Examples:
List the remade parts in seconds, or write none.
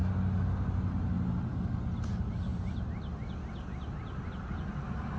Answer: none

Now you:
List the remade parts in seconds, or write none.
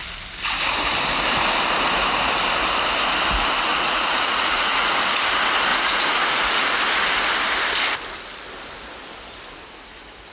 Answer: 3.7-4.9; 5.7-6.5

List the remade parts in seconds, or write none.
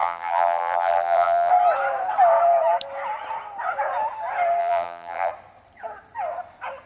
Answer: 0.0-1.5; 4.6-5.3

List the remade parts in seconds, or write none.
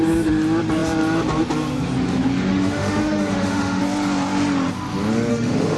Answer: 2.5-3.8; 5.3-5.8